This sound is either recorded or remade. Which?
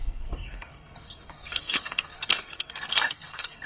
remade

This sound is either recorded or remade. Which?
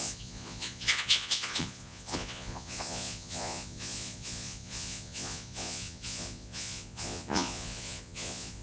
remade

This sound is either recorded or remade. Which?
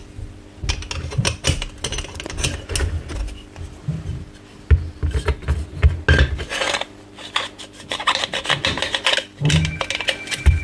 recorded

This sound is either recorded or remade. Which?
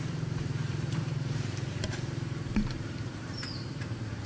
remade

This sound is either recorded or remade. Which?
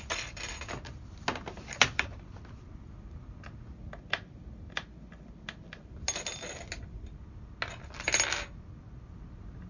recorded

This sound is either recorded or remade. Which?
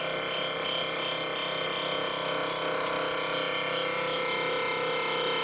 recorded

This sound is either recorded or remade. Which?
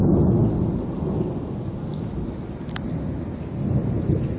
recorded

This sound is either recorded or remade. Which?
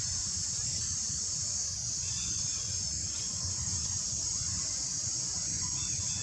remade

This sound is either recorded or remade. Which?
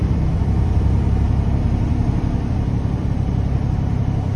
remade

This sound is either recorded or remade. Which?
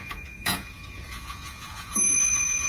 remade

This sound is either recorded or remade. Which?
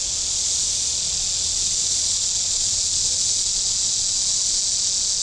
recorded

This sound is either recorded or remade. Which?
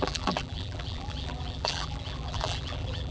remade